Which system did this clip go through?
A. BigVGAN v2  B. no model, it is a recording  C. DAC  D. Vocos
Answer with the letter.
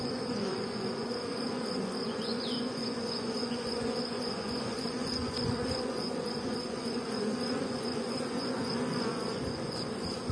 D